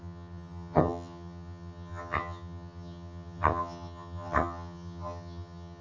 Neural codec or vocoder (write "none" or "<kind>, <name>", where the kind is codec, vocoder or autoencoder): vocoder, HiFi-GAN